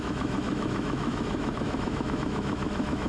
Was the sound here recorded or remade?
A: remade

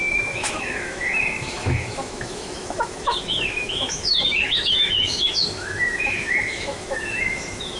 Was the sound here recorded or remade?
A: remade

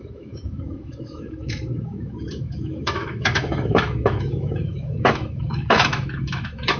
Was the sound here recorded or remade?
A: remade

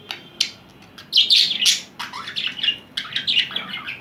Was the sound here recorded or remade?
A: recorded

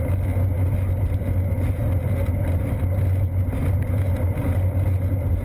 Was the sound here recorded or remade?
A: recorded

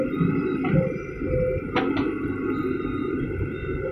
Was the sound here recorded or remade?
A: recorded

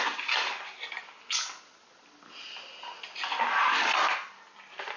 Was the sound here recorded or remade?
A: recorded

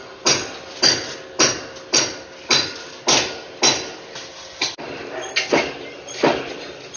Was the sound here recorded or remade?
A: recorded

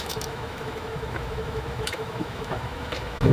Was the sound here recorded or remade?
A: remade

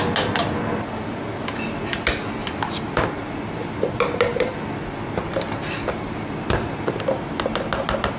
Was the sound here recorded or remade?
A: recorded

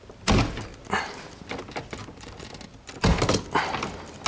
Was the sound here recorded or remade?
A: recorded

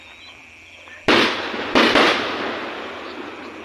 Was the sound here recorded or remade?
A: recorded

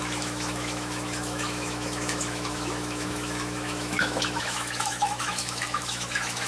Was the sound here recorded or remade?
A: remade